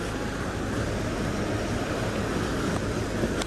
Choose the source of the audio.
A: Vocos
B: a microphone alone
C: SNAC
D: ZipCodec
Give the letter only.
B